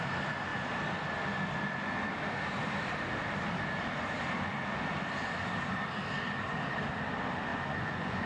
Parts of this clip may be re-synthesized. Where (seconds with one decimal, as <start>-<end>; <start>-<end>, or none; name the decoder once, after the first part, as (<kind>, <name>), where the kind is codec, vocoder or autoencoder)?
7.5-8.3 (vocoder, Vocos)